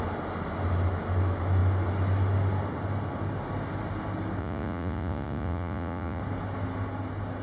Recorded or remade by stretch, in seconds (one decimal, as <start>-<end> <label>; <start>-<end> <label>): 0.0-4.4 recorded; 4.4-6.2 remade; 6.2-7.4 recorded